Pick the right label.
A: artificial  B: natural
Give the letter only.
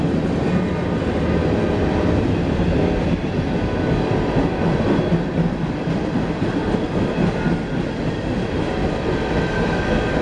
B